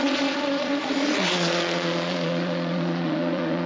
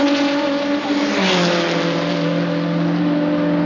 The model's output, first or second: first